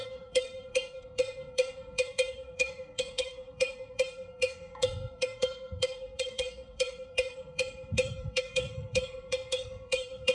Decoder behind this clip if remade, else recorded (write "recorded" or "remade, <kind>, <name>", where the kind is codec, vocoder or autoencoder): remade, codec, SNAC